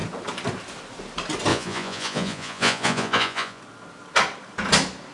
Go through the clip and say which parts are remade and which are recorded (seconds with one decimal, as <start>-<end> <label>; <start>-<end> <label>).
0.0-1.5 recorded; 1.5-3.6 remade; 3.6-5.1 recorded